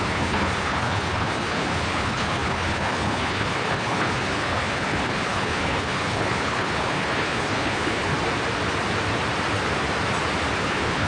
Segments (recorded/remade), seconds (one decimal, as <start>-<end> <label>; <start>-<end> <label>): 0.0-8.1 remade; 8.1-10.6 recorded; 10.6-11.1 remade